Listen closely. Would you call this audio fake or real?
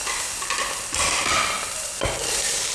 real